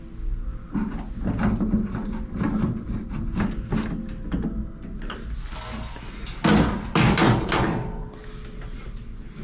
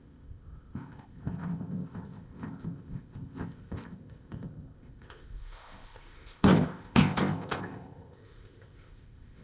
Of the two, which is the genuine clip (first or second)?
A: first